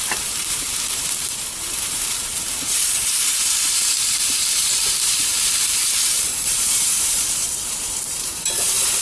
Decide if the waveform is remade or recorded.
remade